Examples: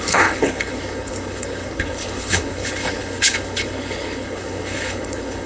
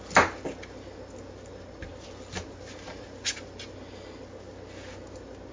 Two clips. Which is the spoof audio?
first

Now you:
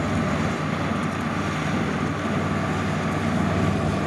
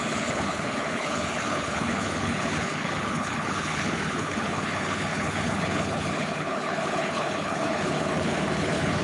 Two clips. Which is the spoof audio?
second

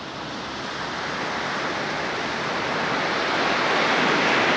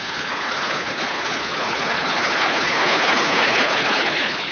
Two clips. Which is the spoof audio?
second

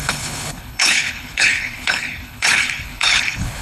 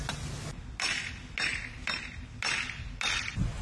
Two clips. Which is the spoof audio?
first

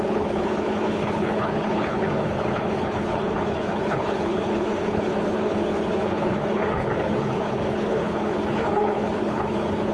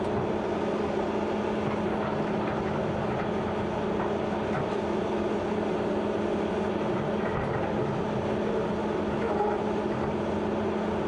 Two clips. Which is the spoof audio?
first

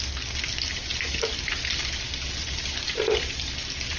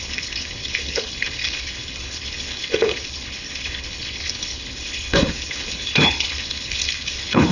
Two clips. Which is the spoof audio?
second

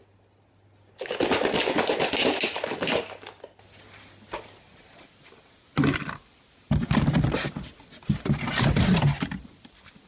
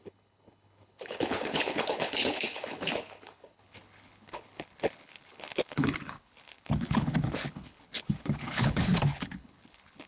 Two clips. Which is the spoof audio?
second